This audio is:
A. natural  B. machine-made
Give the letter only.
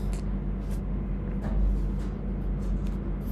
A